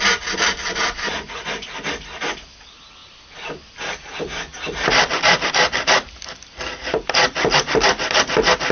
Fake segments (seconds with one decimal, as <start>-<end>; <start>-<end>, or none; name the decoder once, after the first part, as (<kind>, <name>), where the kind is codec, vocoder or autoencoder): none